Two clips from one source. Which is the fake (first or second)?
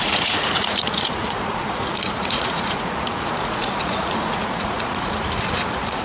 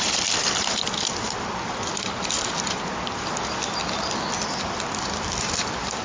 first